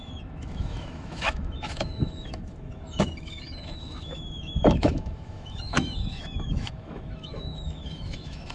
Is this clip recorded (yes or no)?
no